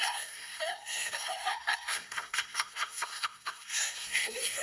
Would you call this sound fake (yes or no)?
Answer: yes